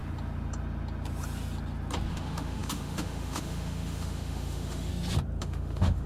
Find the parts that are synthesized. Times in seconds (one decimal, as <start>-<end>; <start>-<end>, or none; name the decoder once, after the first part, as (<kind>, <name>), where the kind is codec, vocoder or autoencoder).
2.1-4.9 (autoencoder, DAC-VAE); 5.4-6.1